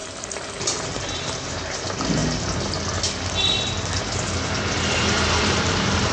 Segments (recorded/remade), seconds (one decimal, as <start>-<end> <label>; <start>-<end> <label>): 0.0-0.6 recorded; 0.6-2.2 remade; 2.2-5.4 recorded; 5.4-6.1 remade